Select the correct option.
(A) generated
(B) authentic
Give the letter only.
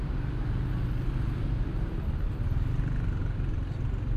B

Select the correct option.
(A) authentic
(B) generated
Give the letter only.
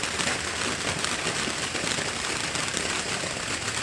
A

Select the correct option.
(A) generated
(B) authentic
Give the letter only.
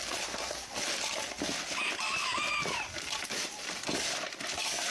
B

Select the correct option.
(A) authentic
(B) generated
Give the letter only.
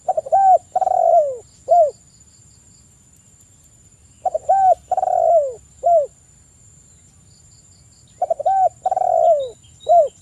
A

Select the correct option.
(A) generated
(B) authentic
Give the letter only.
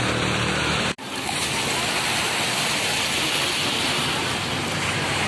B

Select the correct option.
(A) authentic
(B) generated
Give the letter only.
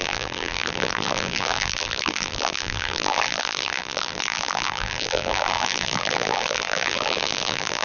B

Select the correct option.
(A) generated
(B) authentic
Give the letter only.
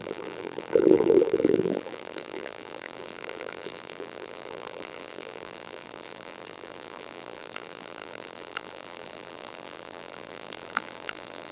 A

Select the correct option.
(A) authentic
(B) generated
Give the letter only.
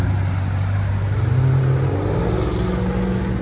A